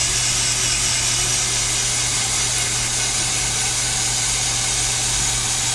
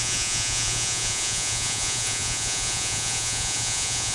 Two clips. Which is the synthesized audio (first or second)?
second